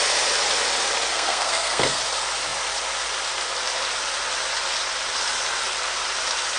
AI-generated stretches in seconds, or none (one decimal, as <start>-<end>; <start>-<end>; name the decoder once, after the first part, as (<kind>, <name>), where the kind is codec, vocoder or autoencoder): 1.1-2.0 (codec, SNAC)